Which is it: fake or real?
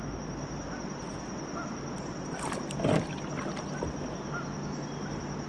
real